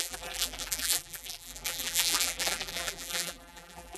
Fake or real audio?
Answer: fake